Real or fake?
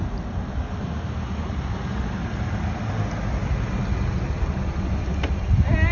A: real